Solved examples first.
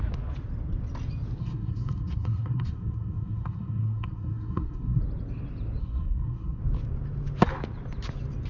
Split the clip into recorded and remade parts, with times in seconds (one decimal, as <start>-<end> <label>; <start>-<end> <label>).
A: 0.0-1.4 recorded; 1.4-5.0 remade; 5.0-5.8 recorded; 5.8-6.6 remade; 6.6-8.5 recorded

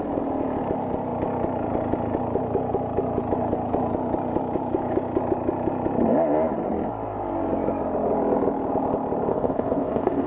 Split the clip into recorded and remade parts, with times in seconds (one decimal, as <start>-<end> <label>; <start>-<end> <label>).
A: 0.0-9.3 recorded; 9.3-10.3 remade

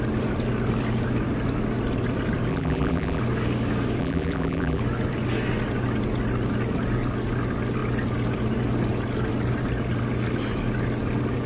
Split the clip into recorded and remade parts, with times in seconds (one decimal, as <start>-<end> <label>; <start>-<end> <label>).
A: 0.0-2.5 recorded; 2.5-3.2 remade; 3.2-4.0 recorded; 4.0-4.8 remade; 4.8-11.5 recorded

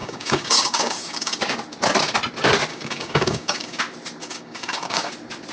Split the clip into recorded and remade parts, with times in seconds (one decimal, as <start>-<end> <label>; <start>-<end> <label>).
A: 0.0-1.4 remade; 1.4-2.7 recorded; 2.7-3.8 remade; 3.8-4.2 recorded; 4.2-5.1 remade; 5.1-5.5 recorded

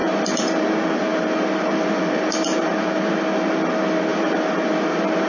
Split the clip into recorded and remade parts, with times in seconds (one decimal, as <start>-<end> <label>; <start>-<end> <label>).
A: 0.0-0.7 remade; 0.7-1.1 recorded; 1.1-3.1 remade; 3.1-4.1 recorded; 4.1-5.3 remade

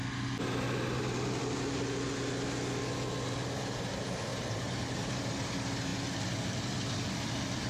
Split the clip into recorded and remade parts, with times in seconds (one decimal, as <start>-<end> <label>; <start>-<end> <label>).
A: 0.0-3.8 recorded; 3.8-5.9 remade; 5.9-7.7 recorded

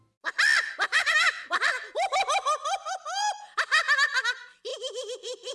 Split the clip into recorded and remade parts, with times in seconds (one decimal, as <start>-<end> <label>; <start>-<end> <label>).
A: 0.0-0.9 recorded; 0.9-1.5 remade; 1.5-5.5 recorded

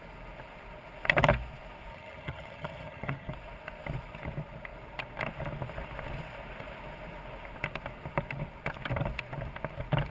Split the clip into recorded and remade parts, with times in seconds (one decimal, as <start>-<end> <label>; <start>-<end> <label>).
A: 0.0-1.9 recorded; 1.9-3.3 remade; 3.3-10.1 recorded